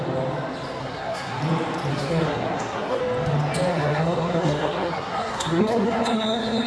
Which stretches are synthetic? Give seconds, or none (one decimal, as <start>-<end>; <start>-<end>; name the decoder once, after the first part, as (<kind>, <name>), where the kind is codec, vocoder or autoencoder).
0.8-1.4 (codec, SNAC); 1.9-3.0; 3.7-6.7